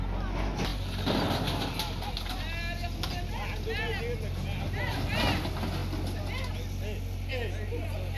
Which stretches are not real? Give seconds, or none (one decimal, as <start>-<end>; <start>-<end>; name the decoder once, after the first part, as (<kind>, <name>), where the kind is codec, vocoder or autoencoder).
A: none